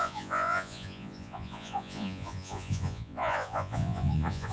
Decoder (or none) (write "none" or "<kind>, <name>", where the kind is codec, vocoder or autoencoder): vocoder, Vocos